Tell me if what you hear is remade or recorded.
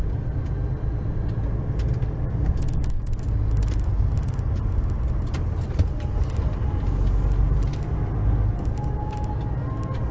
recorded